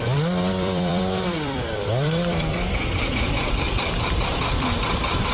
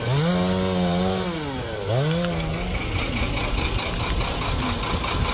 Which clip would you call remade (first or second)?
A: first